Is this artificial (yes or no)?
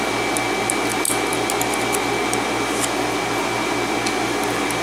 no